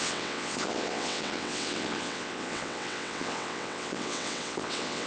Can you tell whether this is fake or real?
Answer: fake